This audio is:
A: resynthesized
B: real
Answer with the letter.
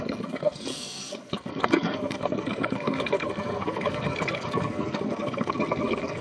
A